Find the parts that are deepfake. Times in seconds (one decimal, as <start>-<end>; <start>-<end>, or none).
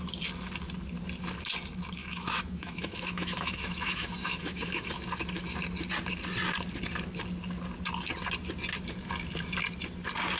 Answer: 2.0-4.9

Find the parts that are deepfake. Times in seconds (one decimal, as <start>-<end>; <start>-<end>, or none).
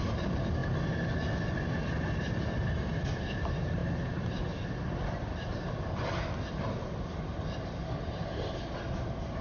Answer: none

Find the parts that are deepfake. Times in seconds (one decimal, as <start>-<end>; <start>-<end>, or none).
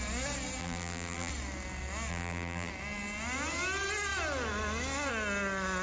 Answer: 0.6-1.3; 2.1-2.7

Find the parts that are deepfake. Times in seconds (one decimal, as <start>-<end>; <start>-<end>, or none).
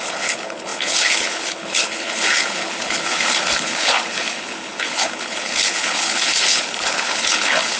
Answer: 0.0-7.8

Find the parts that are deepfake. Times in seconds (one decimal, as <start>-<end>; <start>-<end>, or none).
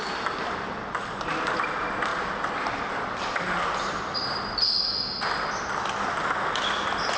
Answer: 2.1-4.8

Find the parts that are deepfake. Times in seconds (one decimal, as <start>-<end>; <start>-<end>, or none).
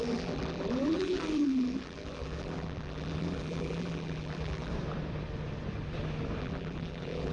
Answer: 0.0-4.7; 6.4-7.3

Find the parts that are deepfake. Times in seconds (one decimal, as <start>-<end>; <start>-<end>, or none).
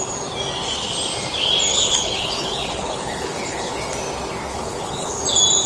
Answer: 1.7-3.7; 4.5-5.2